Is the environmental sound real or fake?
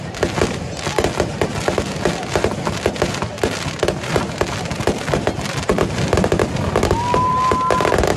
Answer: real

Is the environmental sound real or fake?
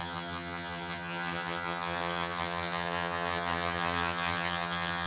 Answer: fake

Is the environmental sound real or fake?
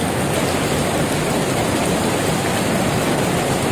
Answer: real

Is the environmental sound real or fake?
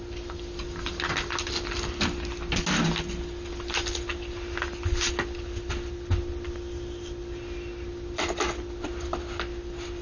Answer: real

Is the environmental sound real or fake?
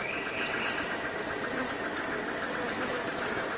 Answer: real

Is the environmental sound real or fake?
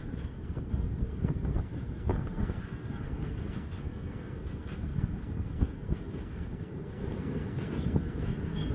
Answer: fake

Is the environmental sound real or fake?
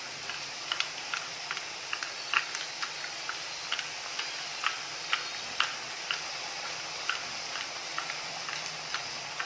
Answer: real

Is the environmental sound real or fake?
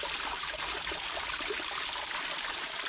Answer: real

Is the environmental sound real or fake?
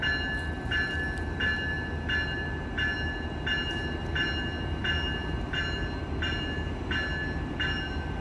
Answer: real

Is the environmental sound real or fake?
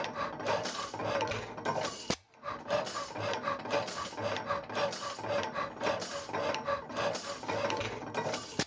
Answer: real